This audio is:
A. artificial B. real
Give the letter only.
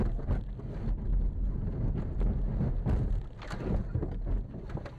B